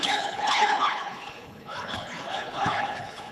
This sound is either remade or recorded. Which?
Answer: remade